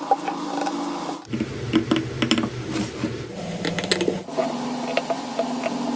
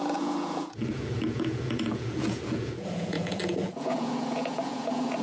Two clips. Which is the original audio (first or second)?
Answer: first